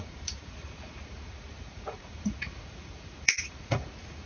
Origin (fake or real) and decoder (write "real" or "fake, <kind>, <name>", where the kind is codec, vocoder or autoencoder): fake, vocoder, Vocos